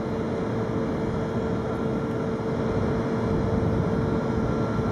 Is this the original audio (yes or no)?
yes